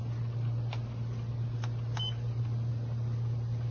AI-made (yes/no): no